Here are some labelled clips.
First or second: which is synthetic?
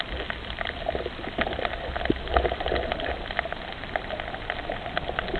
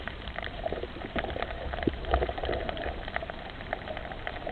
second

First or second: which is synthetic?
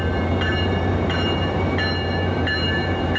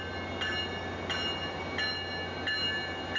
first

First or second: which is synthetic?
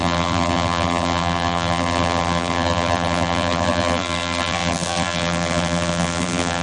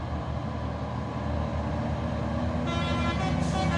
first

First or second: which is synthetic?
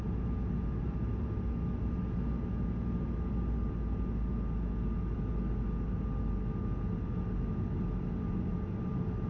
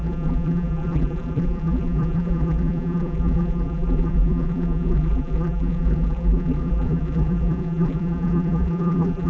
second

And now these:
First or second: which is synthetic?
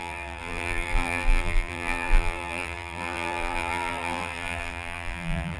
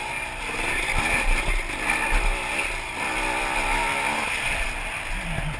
first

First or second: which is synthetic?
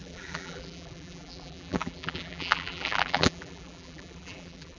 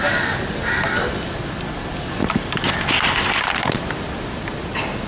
first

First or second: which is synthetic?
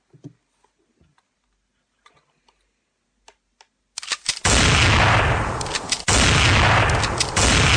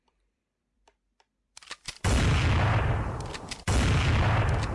second